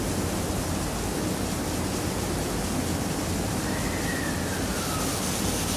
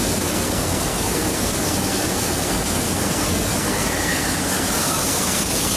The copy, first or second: second